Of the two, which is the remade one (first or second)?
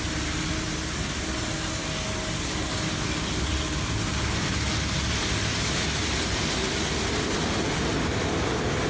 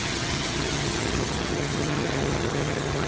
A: second